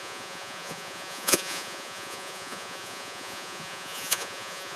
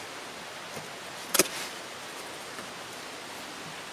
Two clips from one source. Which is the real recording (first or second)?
second